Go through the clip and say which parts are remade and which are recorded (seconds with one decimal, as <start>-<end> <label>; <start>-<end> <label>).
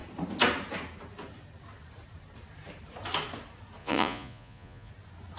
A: 0.0-3.8 recorded; 3.8-4.9 remade; 4.9-5.4 recorded